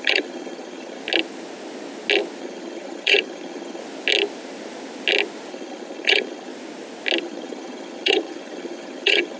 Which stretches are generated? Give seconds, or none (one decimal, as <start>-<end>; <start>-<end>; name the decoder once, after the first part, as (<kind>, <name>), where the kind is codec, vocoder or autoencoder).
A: 0.0-1.0 (vocoder, HiFi-GAN); 2.4-3.8; 5.5-6.5; 7.2-9.4